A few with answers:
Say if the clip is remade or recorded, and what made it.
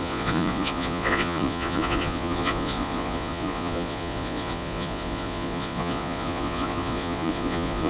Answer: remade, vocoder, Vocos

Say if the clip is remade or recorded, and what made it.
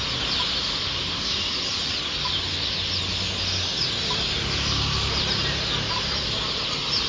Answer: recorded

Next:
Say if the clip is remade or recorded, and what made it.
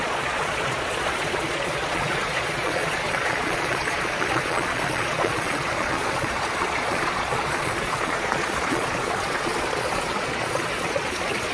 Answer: remade, vocoder, Vocos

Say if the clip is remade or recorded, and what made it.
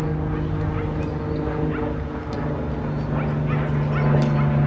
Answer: recorded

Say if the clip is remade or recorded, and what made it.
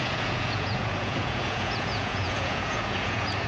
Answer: remade, vocoder, Vocos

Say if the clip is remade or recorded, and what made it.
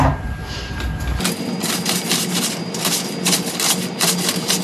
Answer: recorded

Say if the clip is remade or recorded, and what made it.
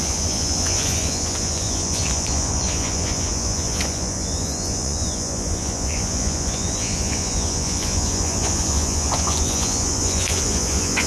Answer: remade, vocoder, Vocos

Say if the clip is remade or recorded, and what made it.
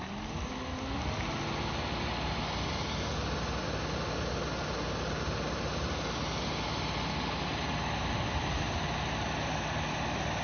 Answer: recorded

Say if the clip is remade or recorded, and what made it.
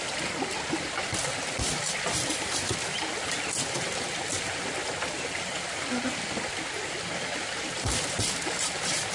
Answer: recorded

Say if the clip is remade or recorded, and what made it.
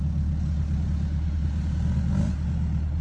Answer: recorded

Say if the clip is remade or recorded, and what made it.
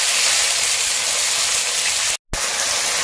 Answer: recorded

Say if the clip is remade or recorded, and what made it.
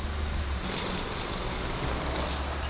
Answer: recorded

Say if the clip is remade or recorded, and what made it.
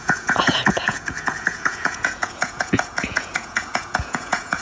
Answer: remade, vocoder, Vocos